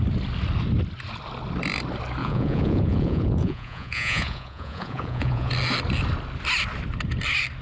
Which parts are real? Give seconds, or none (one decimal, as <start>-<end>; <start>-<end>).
0.0-2.2; 5.5-7.6